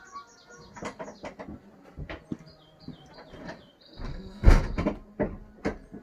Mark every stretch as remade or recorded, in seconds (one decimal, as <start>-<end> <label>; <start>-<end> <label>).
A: 0.0-4.1 recorded; 4.1-4.6 remade; 4.6-6.0 recorded